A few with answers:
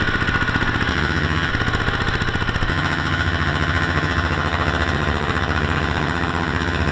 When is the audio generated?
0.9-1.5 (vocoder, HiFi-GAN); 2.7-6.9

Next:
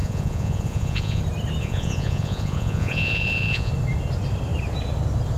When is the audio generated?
0.0-1.2 (vocoder, Vocos); 1.6-3.7

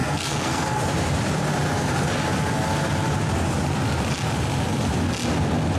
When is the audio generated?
0.0-0.8 (codec, SNAC)

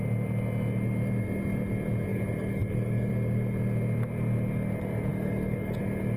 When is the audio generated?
2.1-3.1 (codec, DAC); 5.1-5.8

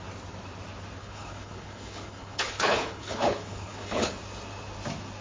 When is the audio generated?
1.0-4.1 (codec, HILCodec)

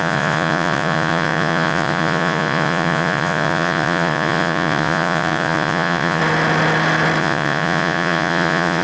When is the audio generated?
0.0-6.2 (vocoder, Vocos); 7.2-8.8

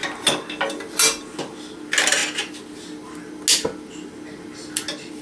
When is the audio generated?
none